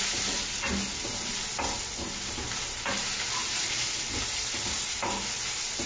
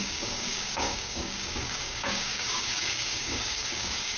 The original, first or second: first